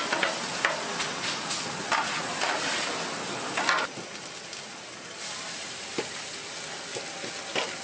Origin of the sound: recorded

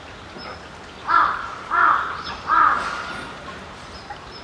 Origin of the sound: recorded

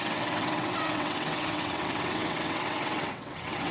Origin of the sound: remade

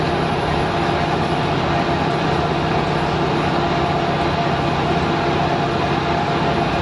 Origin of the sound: recorded